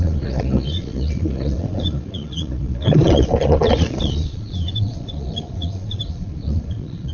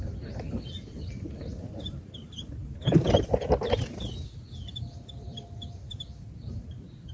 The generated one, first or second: first